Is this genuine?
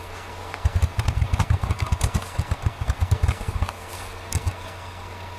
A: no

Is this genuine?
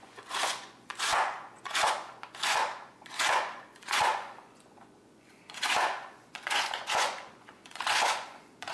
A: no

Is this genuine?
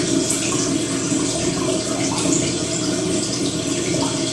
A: yes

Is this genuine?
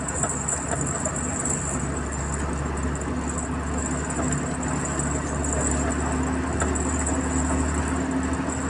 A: yes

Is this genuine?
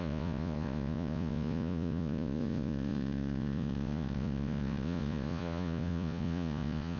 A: no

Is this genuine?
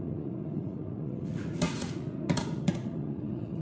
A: no